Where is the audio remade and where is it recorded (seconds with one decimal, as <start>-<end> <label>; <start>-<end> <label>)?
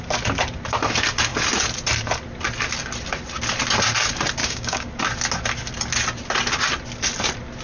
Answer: 0.0-4.4 recorded; 4.4-4.9 remade; 4.9-7.6 recorded